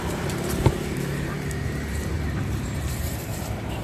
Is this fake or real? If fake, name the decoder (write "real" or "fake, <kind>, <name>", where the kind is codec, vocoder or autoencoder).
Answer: fake, vocoder, BigVGAN v2